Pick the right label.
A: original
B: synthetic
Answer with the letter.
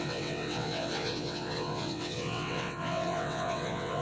B